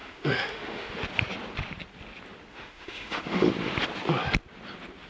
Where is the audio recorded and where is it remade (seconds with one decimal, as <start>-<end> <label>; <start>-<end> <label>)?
0.0-0.9 remade; 0.9-2.5 recorded; 2.5-3.5 remade; 3.5-5.1 recorded